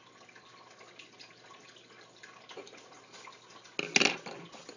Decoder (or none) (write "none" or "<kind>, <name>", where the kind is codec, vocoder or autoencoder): none